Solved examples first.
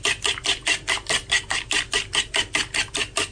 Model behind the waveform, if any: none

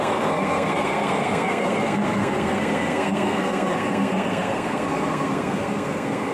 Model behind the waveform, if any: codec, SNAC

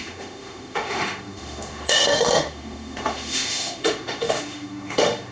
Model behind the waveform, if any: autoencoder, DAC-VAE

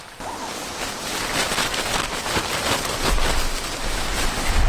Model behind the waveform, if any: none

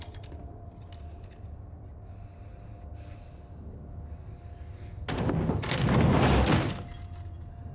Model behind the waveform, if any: none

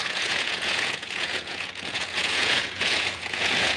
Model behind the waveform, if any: vocoder, Vocos